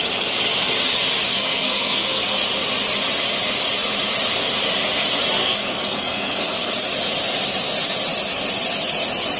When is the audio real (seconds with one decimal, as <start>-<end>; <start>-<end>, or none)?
0.0-1.3; 2.4-5.4; 6.7-9.4